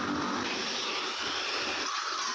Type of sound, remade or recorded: recorded